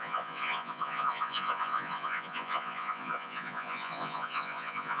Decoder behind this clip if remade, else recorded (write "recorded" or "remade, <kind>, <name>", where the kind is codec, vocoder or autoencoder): remade, vocoder, Vocos